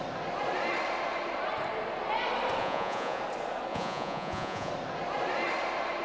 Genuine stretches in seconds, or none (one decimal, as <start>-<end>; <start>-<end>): 0.0-2.6; 3.2-3.7; 4.7-6.0